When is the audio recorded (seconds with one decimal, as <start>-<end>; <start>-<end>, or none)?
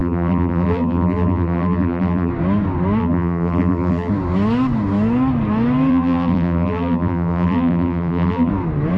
2.3-3.0; 4.1-5.9; 8.5-9.0